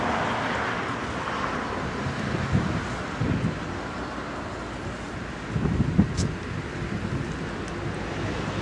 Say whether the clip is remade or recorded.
recorded